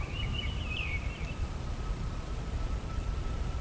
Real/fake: fake